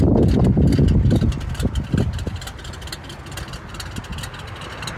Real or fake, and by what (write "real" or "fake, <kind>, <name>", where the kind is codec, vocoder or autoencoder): real